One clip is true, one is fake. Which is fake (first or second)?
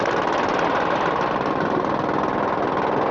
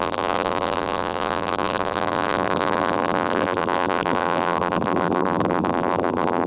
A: second